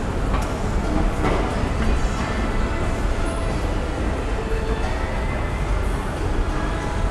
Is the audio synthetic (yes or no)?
no